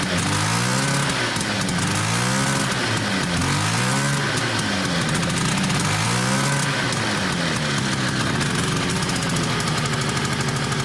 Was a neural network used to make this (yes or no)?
no